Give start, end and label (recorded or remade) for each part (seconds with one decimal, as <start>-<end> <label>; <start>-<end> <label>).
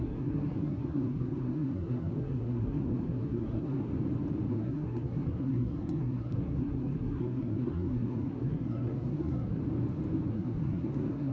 0.0-3.9 remade; 3.9-4.5 recorded; 4.5-9.6 remade; 9.6-10.3 recorded; 10.3-11.3 remade